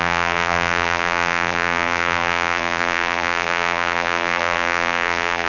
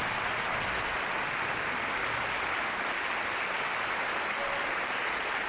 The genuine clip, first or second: second